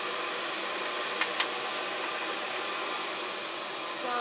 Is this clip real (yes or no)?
yes